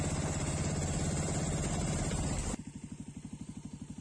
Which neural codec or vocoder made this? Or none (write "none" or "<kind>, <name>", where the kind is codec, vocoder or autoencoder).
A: none